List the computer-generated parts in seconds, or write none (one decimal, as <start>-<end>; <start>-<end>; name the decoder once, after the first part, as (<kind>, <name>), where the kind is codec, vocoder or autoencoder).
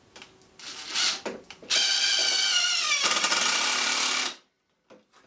none